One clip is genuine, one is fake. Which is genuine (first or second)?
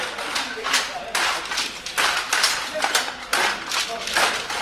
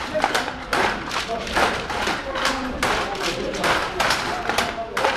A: first